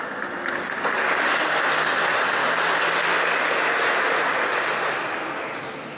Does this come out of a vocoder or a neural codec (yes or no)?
no